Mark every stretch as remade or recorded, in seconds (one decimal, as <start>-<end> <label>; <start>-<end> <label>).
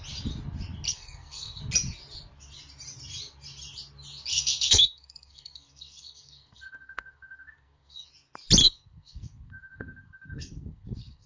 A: 0.0-0.9 recorded; 0.9-1.6 remade; 1.6-4.3 recorded; 4.3-8.1 remade; 8.1-8.6 recorded; 8.6-11.3 remade